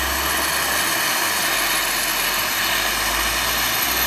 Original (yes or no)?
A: yes